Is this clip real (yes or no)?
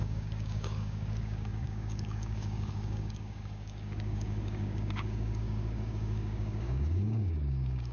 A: no